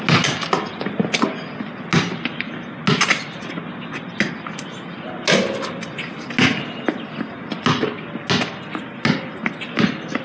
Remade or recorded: recorded